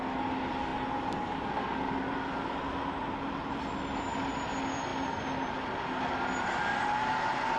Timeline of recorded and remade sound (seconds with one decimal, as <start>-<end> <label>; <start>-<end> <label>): 0.0-7.6 recorded